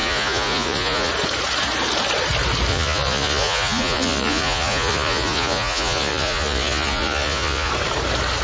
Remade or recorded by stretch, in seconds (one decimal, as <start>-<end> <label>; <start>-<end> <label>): 0.0-1.1 remade; 1.1-2.7 recorded; 2.7-7.7 remade; 7.7-8.4 recorded

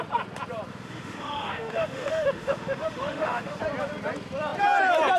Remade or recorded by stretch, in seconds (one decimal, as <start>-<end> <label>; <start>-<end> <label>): 0.0-0.7 recorded; 0.7-3.6 remade; 3.6-5.2 recorded

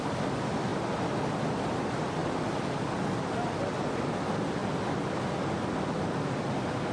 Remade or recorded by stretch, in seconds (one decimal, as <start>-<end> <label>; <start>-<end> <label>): 0.0-6.9 recorded

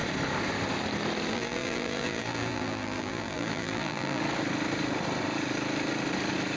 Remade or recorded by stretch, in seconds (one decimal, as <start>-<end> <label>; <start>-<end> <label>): 0.0-1.3 recorded; 1.3-4.2 remade; 4.2-6.6 recorded

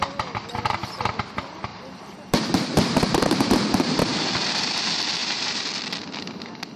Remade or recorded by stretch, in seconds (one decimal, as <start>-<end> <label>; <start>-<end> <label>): 0.0-1.7 recorded; 1.7-4.0 remade; 4.0-5.2 recorded; 5.2-5.7 remade; 5.7-6.8 recorded

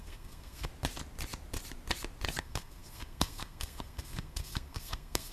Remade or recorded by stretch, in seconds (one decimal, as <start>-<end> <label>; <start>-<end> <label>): 0.0-0.7 remade; 0.7-2.4 recorded; 2.4-5.3 remade

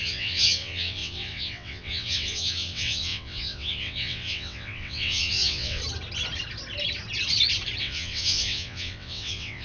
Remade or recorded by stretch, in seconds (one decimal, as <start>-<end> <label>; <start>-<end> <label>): 0.0-5.8 remade; 5.8-7.8 recorded; 7.8-9.6 remade

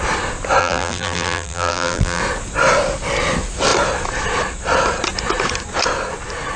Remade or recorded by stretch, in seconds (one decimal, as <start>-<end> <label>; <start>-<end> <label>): 0.0-0.6 recorded; 0.6-2.2 remade; 2.2-6.6 recorded